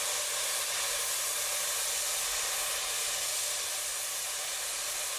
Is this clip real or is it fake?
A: real